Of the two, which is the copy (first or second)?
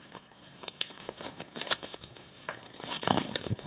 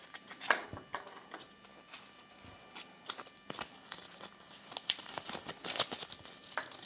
first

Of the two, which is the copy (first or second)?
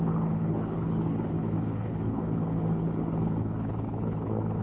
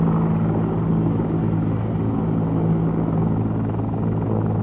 first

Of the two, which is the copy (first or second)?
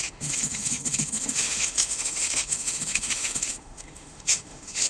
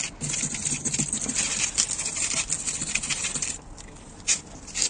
first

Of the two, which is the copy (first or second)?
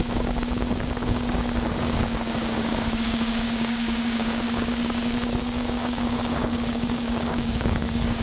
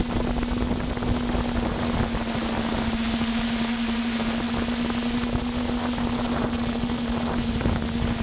first